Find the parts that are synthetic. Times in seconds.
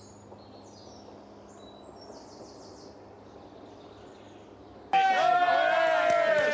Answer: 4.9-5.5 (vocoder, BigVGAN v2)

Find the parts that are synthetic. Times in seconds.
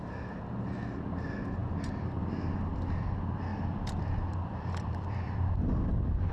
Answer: 1.6-2.3 (vocoder, BigVGAN v2); 3.5-6.3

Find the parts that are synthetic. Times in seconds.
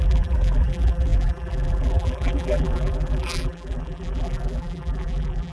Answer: 0.0-5.5 (vocoder, BigVGAN v2)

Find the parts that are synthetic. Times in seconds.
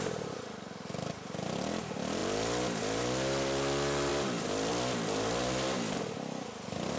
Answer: 2.2-3.0 (vocoder, BigVGAN v2); 4.1-4.7